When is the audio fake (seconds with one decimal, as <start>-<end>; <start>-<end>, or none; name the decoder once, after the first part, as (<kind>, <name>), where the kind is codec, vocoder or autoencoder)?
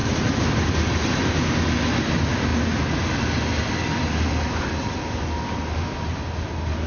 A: none